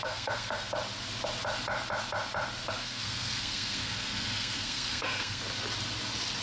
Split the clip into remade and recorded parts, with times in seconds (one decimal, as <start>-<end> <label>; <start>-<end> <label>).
0.0-0.7 remade; 0.7-2.8 recorded; 2.8-5.4 remade; 5.4-6.4 recorded